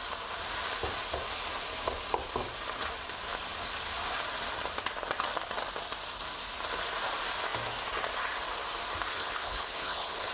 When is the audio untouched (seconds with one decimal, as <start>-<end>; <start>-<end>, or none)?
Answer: 0.0-9.1